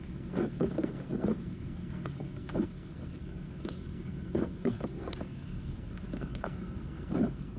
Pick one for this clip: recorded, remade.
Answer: remade